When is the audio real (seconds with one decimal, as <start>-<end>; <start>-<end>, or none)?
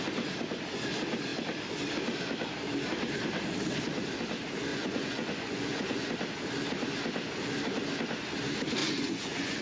0.0-4.7; 6.1-8.8